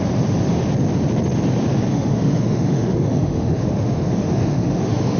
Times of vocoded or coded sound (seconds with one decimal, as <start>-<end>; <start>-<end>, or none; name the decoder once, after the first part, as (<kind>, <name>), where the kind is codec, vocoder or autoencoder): 1.9-5.2 (autoencoder, DAC-VAE)